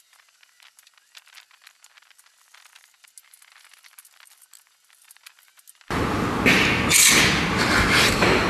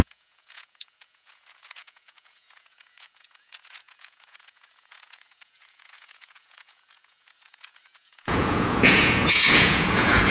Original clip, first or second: first